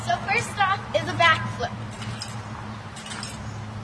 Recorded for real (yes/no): yes